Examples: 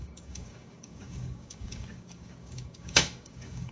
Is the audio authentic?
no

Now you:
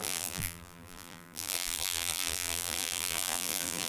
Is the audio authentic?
no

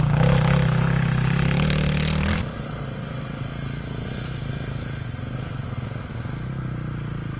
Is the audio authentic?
yes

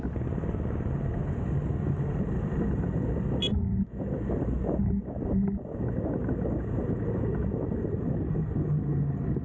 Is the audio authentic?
yes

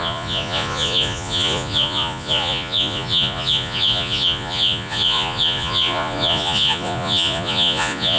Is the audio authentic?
no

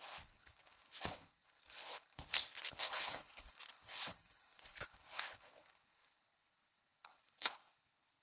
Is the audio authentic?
no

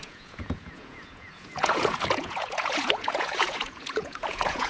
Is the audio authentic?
no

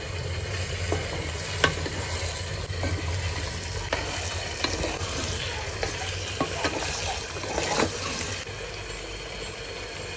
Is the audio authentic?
yes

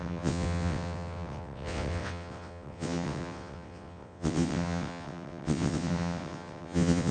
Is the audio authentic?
no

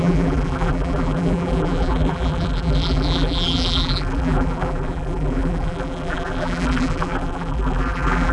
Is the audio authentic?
no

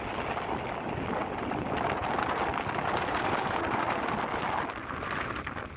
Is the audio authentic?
yes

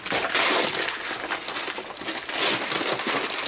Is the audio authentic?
yes